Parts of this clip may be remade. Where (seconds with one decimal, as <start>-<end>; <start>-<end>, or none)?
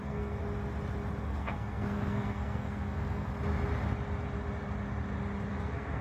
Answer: 0.0-0.4; 1.2-3.3; 5.5-6.0